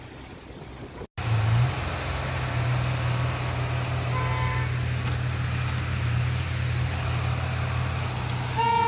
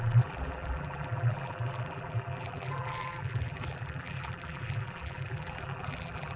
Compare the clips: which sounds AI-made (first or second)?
second